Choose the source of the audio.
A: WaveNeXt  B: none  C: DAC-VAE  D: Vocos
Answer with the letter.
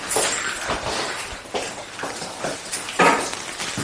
B